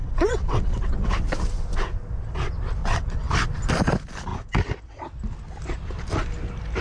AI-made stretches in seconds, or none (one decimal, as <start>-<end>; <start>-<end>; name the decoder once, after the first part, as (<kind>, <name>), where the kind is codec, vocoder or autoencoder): 0.0-1.1 (vocoder, WaveNeXt); 2.8-3.3